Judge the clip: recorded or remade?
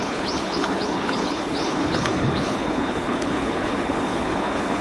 remade